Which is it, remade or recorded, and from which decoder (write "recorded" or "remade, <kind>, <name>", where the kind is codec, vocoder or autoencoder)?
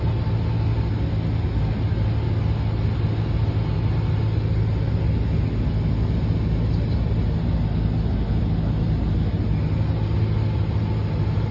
recorded